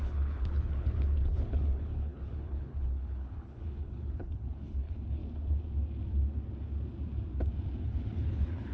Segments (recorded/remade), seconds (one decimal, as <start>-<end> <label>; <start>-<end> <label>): 0.0-5.2 remade; 5.2-7.8 recorded; 7.8-8.7 remade